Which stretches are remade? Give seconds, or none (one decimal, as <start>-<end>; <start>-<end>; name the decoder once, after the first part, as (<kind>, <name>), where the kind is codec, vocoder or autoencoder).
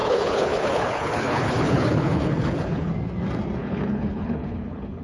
0.0-2.9 (codec, HILCodec); 3.6-5.0